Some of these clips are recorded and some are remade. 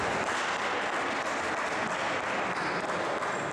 recorded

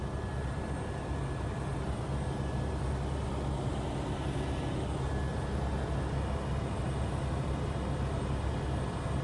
recorded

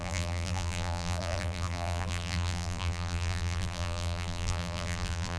remade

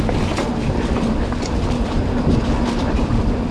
recorded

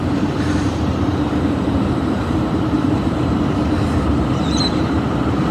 remade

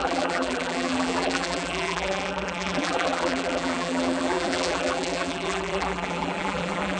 remade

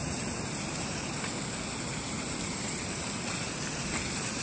remade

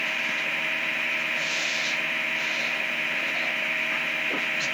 remade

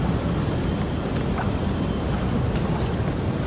recorded